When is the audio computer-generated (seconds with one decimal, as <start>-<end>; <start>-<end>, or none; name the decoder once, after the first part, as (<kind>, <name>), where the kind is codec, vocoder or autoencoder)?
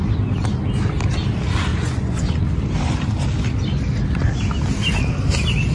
1.7-2.4 (vocoder, Vocos)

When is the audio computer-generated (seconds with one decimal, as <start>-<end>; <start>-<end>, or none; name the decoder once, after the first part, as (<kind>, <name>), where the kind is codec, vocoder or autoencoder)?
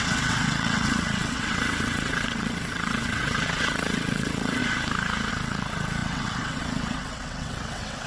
0.0-4.6 (vocoder, WaveNeXt); 5.3-8.1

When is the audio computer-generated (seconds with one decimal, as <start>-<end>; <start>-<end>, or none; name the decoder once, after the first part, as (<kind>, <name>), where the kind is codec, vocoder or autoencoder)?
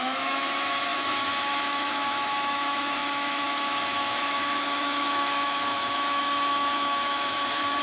0.0-7.8 (autoencoder, DAC-VAE)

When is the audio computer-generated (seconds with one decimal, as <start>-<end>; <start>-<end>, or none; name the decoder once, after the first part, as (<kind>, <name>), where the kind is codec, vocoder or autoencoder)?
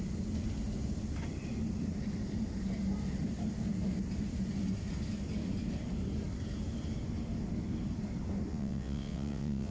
8.5-9.7 (vocoder, WaveNeXt)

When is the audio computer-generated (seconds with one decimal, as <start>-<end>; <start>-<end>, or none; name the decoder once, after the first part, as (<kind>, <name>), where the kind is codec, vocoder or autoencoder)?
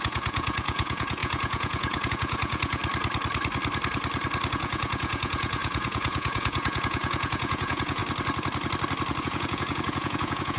0.0-2.8 (vocoder, Vocos); 4.5-8.0; 9.2-10.6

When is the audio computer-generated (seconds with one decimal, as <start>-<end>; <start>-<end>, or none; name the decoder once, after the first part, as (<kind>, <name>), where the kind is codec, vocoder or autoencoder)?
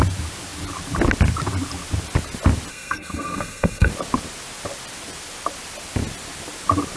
2.7-3.9 (codec, SNAC)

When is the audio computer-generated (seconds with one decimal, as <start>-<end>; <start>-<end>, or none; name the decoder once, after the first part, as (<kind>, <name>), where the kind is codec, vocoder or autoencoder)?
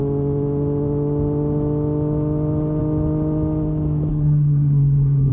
4.1-5.3 (codec, SNAC)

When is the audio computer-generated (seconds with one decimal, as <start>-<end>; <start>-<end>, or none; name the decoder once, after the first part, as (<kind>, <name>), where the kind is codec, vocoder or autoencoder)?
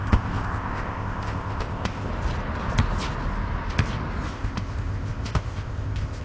0.0-2.1 (codec, ZipCodec); 4.3-6.2